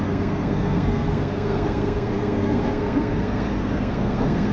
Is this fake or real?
fake